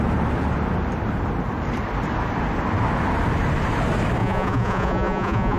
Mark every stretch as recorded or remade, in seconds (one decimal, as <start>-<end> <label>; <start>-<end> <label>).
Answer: 0.0-4.2 recorded; 4.2-5.6 remade